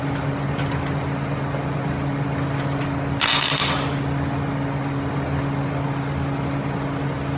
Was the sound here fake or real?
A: real